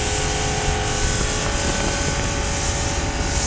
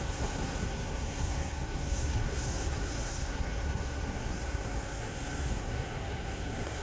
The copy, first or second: second